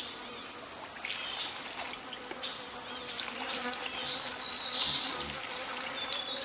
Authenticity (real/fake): real